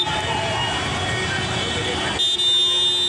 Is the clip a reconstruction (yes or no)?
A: no